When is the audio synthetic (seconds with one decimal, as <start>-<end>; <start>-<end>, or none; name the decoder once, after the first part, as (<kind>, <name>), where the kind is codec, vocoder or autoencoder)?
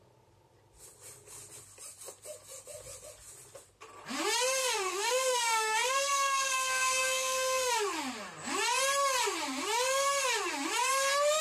4.6-7.7 (codec, SNAC)